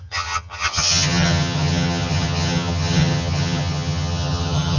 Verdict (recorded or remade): remade